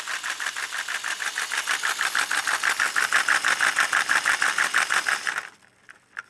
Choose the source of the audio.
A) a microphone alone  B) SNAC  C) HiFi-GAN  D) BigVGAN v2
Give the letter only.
A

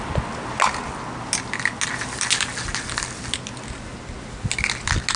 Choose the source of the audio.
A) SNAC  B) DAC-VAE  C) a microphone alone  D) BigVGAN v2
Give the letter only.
C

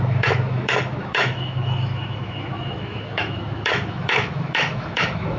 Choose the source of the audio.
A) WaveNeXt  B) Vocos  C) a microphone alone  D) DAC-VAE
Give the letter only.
D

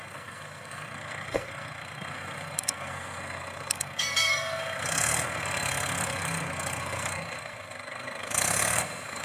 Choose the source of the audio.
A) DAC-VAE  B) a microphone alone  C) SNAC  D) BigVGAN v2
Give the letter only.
C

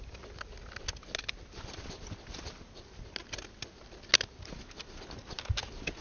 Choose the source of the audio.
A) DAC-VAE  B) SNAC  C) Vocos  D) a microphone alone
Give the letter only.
D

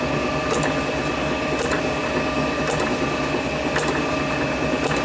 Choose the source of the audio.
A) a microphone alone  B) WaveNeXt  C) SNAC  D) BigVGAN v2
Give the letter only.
A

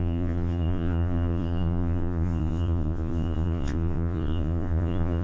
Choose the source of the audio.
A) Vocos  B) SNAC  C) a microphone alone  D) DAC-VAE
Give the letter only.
A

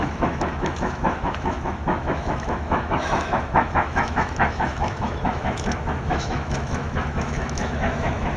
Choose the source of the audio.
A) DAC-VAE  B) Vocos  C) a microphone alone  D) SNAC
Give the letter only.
A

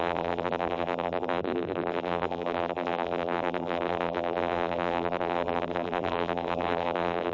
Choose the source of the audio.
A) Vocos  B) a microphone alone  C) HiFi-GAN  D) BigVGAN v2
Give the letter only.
D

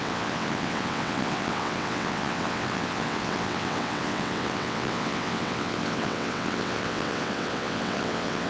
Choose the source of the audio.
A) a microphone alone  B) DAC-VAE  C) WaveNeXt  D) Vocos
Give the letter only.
C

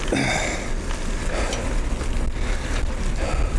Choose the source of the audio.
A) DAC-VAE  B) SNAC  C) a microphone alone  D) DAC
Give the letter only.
C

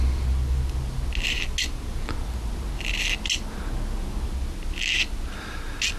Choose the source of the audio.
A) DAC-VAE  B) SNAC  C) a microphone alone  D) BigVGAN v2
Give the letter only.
C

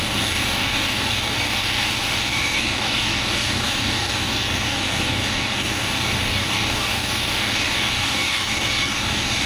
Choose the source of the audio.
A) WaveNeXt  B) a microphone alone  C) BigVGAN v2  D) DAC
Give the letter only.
D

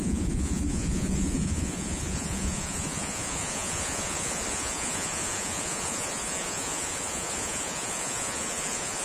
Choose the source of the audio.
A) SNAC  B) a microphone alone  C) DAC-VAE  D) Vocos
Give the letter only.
D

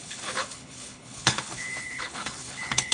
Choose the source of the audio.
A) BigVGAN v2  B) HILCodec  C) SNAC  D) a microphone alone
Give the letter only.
B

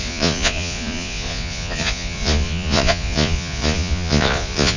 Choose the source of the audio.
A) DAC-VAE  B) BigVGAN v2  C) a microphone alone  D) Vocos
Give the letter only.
D